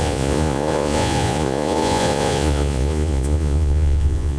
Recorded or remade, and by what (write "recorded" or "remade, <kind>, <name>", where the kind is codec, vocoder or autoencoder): remade, vocoder, Vocos